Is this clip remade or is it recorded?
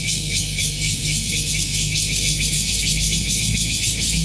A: remade